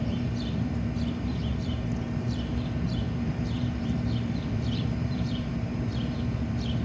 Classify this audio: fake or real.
fake